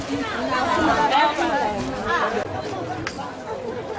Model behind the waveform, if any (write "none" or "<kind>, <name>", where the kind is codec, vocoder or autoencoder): none